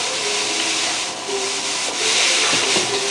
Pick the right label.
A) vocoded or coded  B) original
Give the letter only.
B